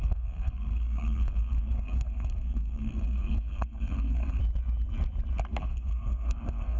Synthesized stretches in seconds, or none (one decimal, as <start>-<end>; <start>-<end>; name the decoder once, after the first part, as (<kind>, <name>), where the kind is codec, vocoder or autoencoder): 0.0-4.4 (codec, SNAC); 5.6-6.8